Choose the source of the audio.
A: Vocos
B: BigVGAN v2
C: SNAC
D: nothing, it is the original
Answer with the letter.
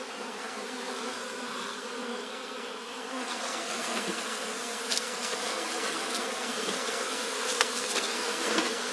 C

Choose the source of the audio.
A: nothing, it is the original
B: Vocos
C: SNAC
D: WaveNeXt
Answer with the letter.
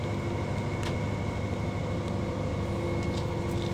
A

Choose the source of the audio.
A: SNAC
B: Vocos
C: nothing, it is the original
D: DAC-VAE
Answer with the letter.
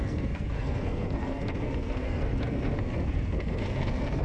A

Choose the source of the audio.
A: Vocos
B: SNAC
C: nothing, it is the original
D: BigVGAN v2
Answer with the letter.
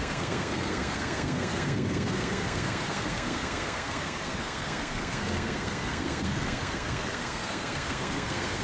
B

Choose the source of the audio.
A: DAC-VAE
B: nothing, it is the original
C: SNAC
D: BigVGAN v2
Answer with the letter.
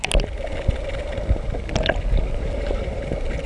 B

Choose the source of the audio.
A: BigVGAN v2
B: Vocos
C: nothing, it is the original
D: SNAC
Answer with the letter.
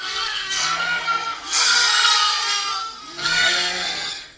D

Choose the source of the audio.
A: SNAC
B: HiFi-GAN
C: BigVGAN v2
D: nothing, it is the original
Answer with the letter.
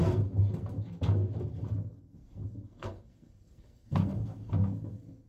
A